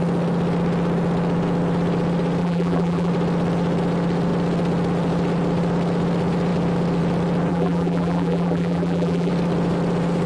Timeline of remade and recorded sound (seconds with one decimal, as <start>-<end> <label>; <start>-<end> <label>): 0.0-2.4 recorded; 2.4-3.1 remade; 3.1-7.5 recorded; 7.5-9.3 remade; 9.3-10.3 recorded

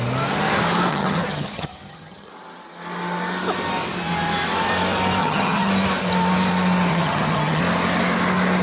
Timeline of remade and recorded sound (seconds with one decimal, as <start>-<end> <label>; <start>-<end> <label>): 0.0-0.9 recorded; 0.9-2.3 remade; 2.3-5.2 recorded; 5.2-5.7 remade; 5.7-6.9 recorded; 6.9-7.6 remade; 7.6-8.6 recorded